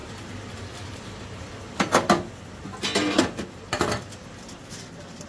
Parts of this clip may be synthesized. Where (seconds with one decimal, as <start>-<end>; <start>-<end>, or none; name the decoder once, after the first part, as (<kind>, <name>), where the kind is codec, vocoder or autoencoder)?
none